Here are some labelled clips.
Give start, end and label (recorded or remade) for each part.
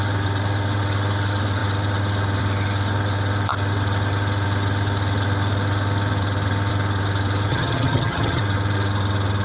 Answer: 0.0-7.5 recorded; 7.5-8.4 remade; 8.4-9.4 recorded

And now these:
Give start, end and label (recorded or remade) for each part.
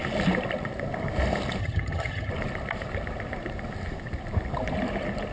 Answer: 0.0-1.6 recorded; 1.6-2.3 remade; 2.3-5.3 recorded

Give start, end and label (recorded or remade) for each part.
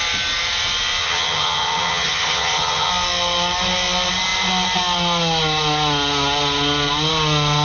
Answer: 0.0-1.0 recorded; 1.0-2.9 remade; 2.9-7.6 recorded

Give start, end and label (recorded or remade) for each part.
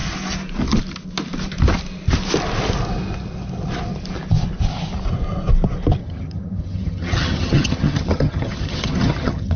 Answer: 0.0-6.0 recorded; 6.0-9.6 remade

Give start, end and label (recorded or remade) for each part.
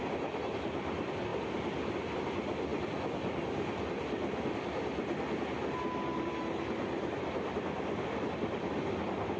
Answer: 0.0-9.4 recorded